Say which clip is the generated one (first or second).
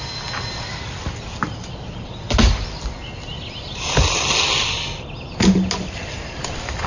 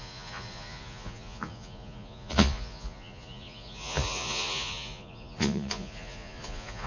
second